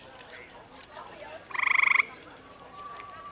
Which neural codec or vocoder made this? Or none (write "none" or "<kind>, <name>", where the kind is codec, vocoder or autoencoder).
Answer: none